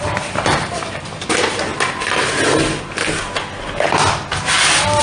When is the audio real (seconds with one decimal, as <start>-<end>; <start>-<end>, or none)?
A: 1.7-5.0

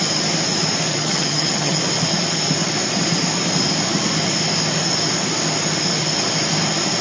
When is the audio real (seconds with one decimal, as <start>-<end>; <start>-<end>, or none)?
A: 0.0-0.9; 1.8-7.0